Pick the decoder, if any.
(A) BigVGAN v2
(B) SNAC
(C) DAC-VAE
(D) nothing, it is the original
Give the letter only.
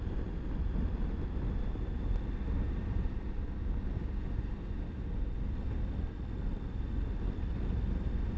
D